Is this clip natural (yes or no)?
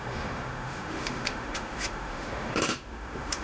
no